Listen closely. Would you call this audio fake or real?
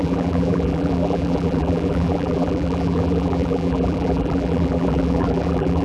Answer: fake